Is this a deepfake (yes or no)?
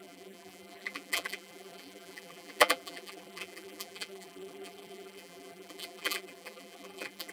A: yes